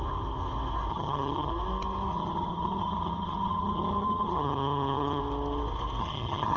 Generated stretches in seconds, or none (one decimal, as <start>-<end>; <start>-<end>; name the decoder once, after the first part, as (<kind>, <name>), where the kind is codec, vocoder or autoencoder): 0.9-1.5 (vocoder, HiFi-GAN); 2.1-5.2; 6.0-6.6